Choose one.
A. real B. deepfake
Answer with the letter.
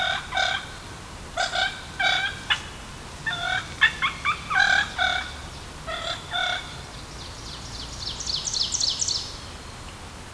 A